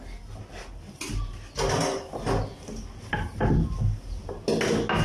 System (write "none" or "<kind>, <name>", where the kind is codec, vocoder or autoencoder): none